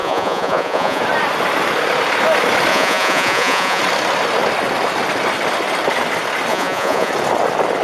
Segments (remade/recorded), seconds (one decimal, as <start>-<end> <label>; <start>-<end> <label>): 0.0-1.0 remade; 1.0-2.7 recorded; 2.7-3.8 remade; 3.8-6.5 recorded; 6.5-7.1 remade; 7.1-7.8 recorded